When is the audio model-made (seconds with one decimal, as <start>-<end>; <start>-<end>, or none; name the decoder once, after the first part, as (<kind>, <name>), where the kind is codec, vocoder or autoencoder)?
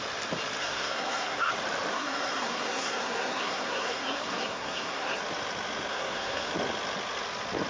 0.6-1.5 (codec, SNAC); 1.9-5.2; 5.9-6.5